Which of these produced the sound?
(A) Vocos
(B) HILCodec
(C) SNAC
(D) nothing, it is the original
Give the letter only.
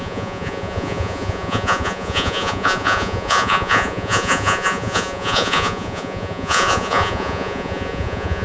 A